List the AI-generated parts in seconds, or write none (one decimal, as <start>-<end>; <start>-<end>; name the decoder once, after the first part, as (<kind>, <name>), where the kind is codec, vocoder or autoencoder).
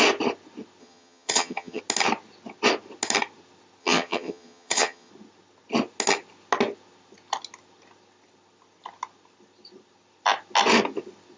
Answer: 0.8-1.8 (vocoder, HiFi-GAN); 3.8-5.1